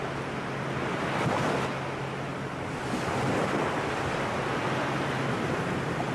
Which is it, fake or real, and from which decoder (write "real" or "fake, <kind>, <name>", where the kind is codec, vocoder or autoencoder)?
real